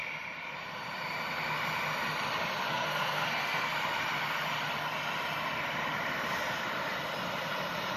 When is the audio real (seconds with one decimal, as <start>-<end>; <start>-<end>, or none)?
0.0-2.7; 3.7-8.0